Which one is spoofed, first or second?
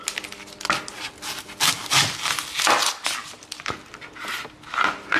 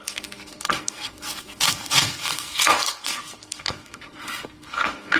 second